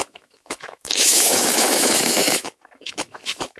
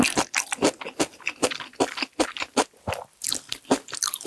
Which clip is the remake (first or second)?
first